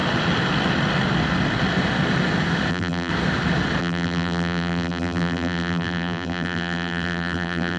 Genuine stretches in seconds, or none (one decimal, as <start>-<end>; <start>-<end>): 0.0-2.7; 3.1-3.8